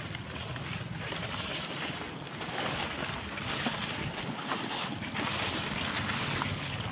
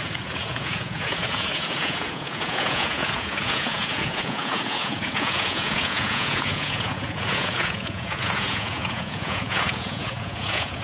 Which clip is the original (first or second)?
first